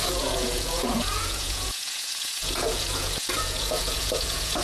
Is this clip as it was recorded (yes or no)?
no